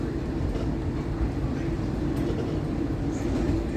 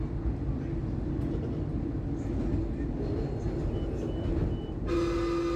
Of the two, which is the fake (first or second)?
first